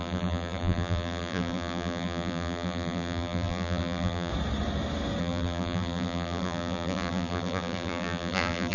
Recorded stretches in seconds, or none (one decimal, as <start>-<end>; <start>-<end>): 4.3-5.2